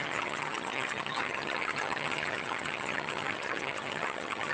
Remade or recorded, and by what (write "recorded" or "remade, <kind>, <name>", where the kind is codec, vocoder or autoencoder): remade, vocoder, HiFi-GAN